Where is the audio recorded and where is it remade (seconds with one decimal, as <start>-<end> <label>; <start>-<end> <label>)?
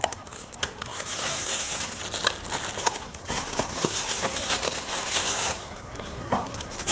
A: 0.0-2.0 remade; 2.0-2.8 recorded; 2.8-6.9 remade